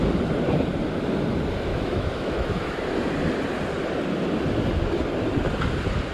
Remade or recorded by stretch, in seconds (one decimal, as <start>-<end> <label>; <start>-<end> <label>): 0.0-1.7 recorded; 1.7-2.7 remade; 2.7-6.1 recorded